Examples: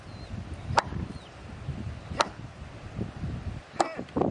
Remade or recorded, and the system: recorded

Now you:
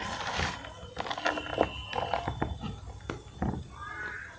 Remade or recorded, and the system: recorded